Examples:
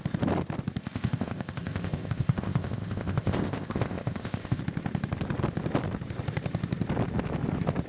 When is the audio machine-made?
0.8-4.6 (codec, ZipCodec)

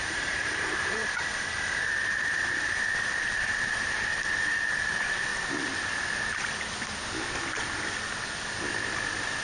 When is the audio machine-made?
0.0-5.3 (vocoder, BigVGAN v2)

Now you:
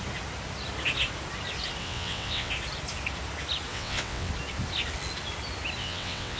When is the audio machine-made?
1.8-2.5 (vocoder, WaveNeXt); 3.7-4.3; 5.8-6.4

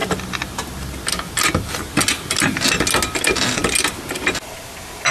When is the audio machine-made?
none